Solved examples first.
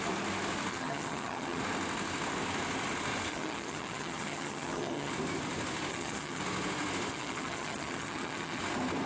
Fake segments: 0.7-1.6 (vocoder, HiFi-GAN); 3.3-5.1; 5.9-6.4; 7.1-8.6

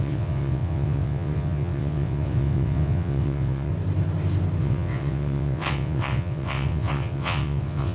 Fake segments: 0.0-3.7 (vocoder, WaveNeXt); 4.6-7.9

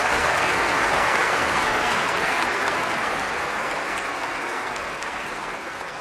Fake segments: 0.0-6.0 (codec, SNAC)